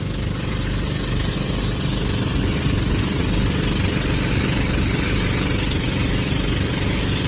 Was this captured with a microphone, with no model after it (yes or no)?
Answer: yes